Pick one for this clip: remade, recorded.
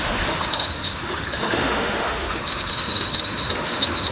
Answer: remade